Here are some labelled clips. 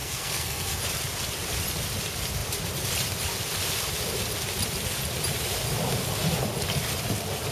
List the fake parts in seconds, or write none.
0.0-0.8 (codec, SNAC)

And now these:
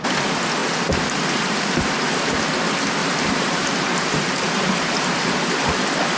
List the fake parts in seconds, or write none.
3.0-5.2 (vocoder, BigVGAN v2)